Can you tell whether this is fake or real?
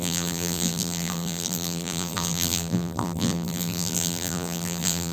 fake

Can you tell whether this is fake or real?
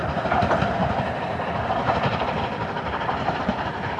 fake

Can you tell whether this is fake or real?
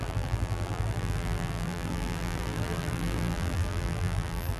fake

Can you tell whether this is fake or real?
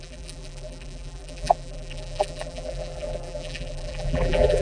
fake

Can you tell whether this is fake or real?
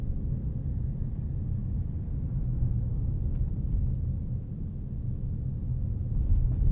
real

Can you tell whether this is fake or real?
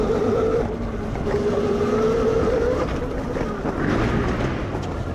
real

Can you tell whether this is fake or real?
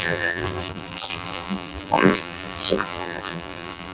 fake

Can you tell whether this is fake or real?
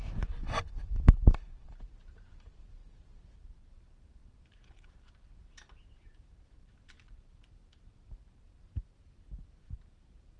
fake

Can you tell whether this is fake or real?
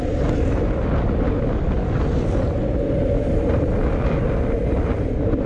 real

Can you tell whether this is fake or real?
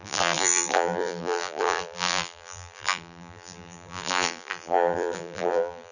fake